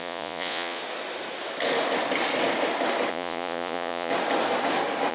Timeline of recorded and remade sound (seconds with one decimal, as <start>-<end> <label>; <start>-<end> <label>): 0.0-0.8 remade; 0.8-3.1 recorded; 3.1-4.1 remade; 4.1-5.1 recorded